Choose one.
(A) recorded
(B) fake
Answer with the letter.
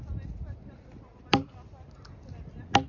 A